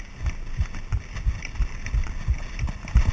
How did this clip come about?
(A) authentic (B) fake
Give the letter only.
A